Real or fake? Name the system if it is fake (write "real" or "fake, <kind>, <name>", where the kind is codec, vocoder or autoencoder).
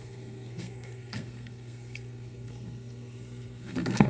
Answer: fake, codec, SNAC